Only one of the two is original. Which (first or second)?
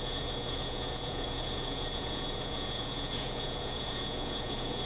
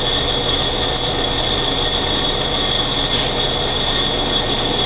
second